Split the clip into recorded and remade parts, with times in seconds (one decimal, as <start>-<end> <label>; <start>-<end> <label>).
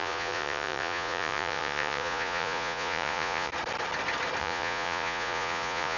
0.0-3.5 remade; 3.5-4.4 recorded; 4.4-6.0 remade